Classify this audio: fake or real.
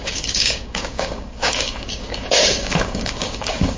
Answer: fake